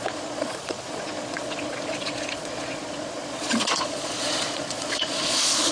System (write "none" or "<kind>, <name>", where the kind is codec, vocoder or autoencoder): vocoder, Vocos